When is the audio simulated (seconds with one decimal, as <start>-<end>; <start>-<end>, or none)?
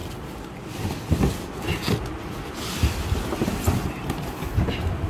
none